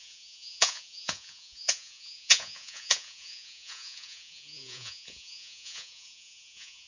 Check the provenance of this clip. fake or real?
fake